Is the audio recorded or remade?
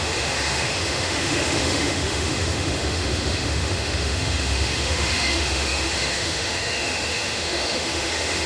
remade